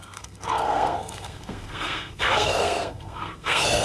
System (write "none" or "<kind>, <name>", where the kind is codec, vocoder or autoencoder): codec, SNAC